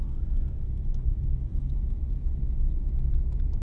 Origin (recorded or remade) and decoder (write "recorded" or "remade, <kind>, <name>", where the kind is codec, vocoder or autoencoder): recorded